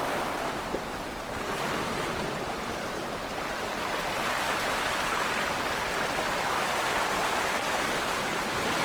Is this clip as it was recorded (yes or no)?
yes